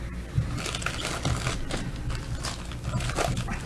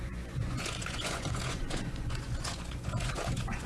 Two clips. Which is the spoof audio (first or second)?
second